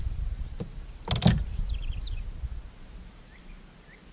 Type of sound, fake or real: real